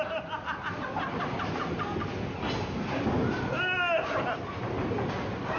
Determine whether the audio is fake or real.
real